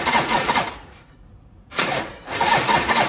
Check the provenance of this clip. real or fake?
fake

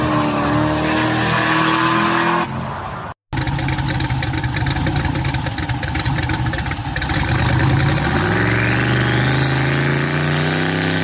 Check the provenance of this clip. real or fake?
real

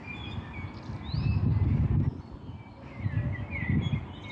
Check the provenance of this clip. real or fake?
real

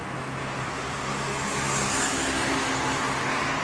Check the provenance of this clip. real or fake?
real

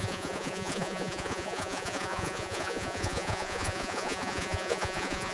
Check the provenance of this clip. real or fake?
fake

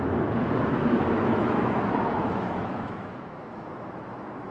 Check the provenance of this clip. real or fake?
fake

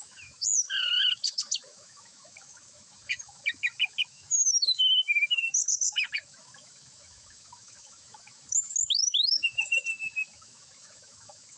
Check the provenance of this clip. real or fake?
fake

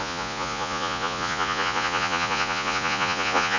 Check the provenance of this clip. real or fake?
fake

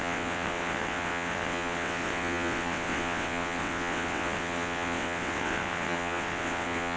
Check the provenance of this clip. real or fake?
fake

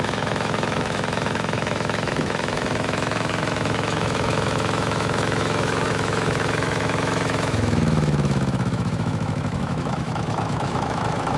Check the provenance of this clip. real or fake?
fake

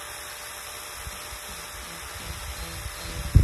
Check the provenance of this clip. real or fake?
real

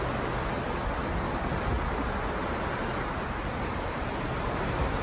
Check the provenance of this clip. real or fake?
real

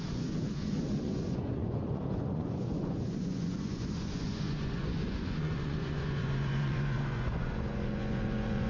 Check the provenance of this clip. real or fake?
fake